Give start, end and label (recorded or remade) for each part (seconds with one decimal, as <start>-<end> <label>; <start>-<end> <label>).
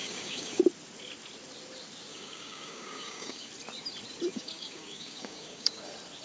0.0-0.6 remade; 0.6-2.1 recorded; 2.1-3.5 remade; 3.5-4.3 recorded; 4.3-5.8 remade; 5.8-6.2 recorded